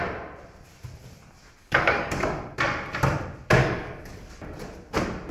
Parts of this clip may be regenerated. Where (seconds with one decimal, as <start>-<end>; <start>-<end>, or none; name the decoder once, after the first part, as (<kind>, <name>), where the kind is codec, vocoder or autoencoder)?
1.6-2.2 (codec, DAC); 3.6-4.3